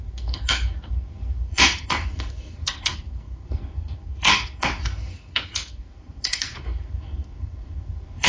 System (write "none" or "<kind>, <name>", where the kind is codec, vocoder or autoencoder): codec, SNAC